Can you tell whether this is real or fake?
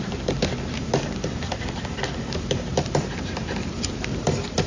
fake